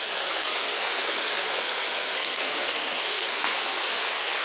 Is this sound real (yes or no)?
no